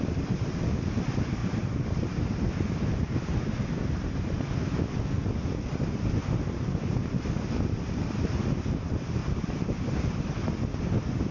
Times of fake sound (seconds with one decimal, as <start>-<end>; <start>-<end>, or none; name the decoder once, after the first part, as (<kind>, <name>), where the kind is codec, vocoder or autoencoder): 1.4-4.1 (vocoder, BigVGAN v2); 9.2-10.2